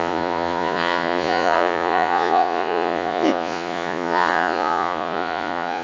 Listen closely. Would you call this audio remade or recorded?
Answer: remade